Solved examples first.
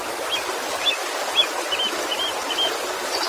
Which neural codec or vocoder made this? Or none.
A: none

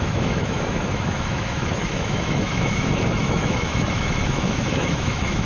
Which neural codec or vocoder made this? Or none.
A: autoencoder, DAC-VAE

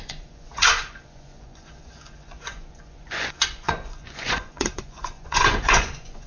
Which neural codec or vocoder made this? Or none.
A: vocoder, Vocos